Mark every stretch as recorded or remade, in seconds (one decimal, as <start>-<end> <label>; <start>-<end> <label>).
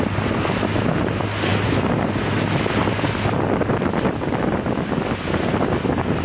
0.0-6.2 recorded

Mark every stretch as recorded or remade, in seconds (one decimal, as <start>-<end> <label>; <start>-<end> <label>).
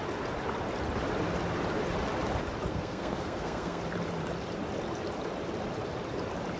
0.0-2.7 recorded; 2.7-3.8 remade; 3.8-6.6 recorded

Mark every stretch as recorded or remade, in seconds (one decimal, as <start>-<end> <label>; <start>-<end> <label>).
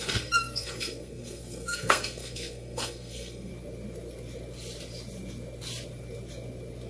0.0-3.5 remade; 3.5-6.9 recorded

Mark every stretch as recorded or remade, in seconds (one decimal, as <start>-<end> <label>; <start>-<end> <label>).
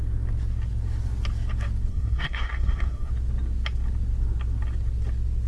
0.0-1.9 recorded; 1.9-3.1 remade; 3.1-5.5 recorded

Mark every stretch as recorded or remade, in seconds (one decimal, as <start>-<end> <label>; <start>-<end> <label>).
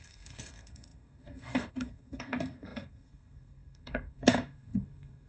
0.0-5.3 remade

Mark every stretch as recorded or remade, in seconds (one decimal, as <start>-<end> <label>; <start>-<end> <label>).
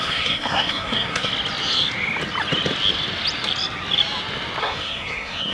0.0-1.3 remade; 1.3-4.6 recorded; 4.6-5.5 remade